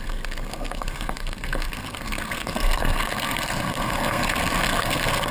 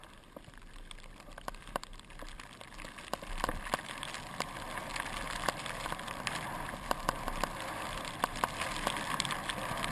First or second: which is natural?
second